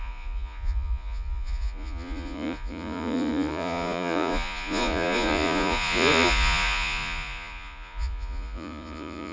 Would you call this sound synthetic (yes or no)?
yes